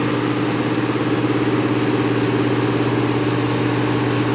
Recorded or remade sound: recorded